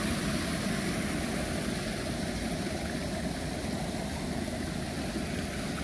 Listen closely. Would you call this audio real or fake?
real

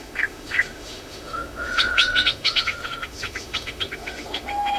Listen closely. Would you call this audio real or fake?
fake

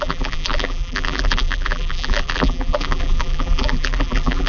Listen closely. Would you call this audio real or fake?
fake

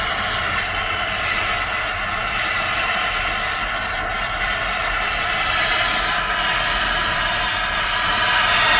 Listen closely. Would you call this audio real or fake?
real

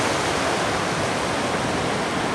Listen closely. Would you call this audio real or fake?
real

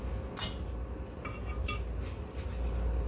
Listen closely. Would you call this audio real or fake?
real